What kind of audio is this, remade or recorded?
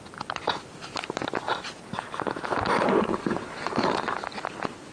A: recorded